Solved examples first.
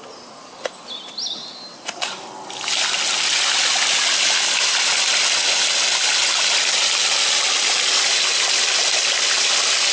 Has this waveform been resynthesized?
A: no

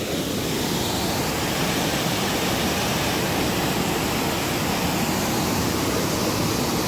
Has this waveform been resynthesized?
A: no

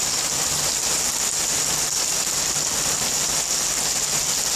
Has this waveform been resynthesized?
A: no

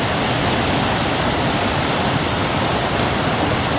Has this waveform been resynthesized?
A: no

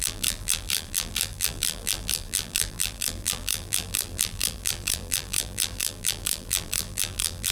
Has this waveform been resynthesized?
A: yes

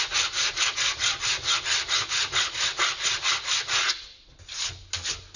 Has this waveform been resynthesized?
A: no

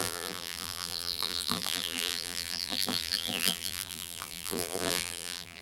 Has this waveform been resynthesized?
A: yes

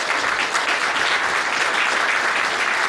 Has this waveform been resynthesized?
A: no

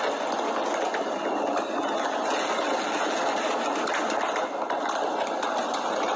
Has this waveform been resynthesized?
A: no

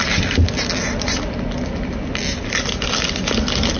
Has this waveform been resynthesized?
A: no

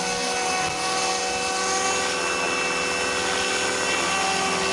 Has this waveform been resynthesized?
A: no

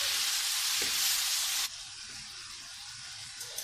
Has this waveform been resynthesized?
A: no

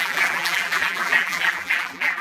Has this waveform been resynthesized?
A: yes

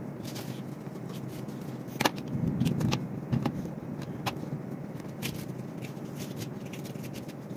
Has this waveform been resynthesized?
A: no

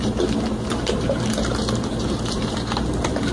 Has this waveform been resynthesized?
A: yes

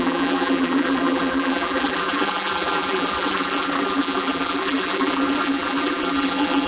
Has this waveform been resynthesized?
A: yes